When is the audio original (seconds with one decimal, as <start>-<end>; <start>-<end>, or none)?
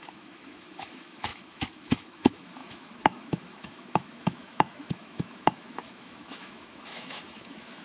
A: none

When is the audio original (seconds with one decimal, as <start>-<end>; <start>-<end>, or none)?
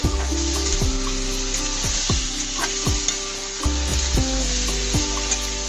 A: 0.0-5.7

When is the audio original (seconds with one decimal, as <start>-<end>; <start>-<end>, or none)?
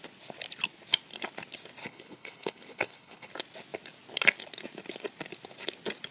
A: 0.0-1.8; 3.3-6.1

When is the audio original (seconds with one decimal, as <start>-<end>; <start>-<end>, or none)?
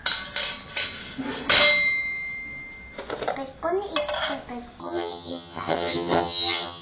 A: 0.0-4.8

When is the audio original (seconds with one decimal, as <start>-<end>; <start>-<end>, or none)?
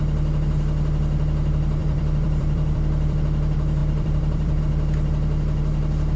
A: 0.0-1.8; 3.2-3.8; 4.6-6.2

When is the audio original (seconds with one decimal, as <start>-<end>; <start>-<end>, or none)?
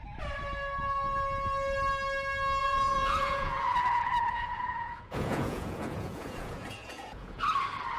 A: 0.0-2.6; 7.4-8.0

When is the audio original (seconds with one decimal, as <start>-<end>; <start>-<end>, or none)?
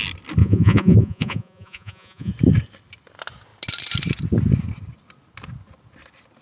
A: 0.0-0.4; 2.3-6.4